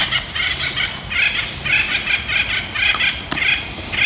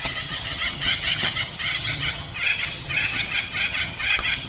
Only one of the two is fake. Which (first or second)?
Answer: second